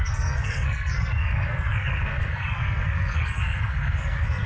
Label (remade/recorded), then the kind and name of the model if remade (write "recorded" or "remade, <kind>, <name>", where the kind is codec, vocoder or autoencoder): remade, codec, SNAC